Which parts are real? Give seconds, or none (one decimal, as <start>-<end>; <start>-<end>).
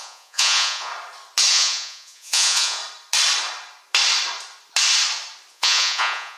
0.9-1.5; 2.8-5.5